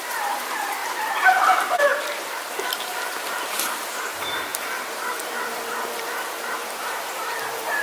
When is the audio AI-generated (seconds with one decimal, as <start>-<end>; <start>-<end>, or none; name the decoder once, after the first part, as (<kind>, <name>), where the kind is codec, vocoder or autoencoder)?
0.0-0.8 (vocoder, BigVGAN v2); 1.3-1.9; 2.5-7.8